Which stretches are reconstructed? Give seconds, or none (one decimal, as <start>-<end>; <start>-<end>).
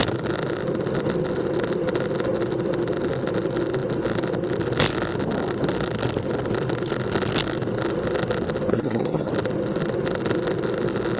8.7-9.3